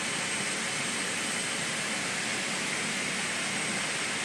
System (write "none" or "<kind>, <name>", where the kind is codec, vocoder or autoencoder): none